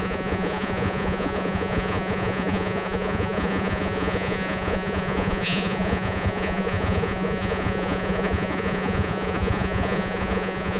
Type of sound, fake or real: fake